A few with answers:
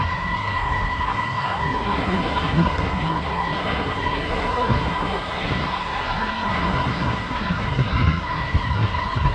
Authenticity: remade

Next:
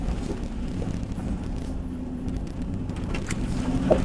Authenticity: recorded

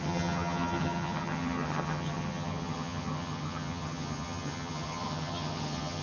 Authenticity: remade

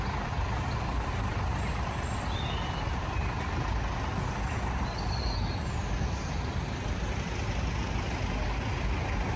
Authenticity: recorded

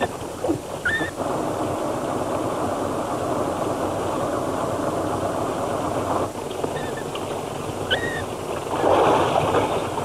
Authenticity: recorded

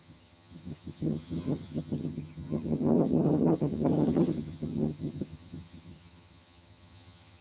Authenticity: remade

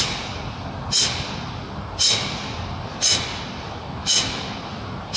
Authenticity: recorded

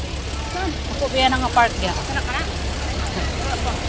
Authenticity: recorded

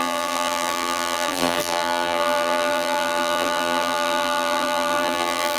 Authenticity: remade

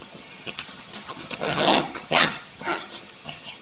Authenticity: remade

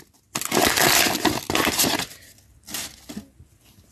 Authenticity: recorded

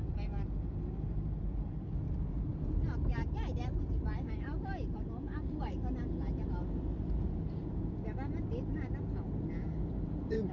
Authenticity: recorded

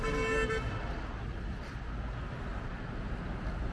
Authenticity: recorded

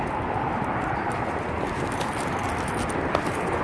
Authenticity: recorded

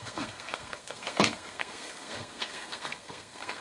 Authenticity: remade